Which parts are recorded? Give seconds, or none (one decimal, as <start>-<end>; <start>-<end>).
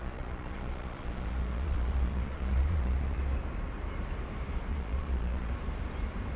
3.2-4.7; 5.5-6.4